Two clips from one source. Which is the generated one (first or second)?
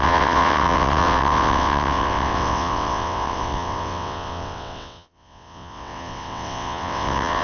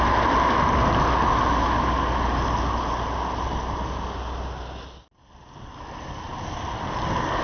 first